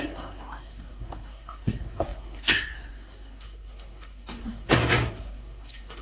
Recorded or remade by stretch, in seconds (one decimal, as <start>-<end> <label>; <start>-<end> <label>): 0.0-6.0 remade